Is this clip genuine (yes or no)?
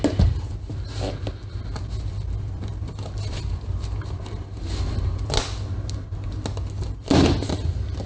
yes